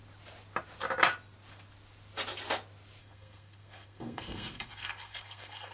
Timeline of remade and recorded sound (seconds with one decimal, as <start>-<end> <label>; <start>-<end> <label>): 0.0-3.0 recorded; 3.0-5.7 remade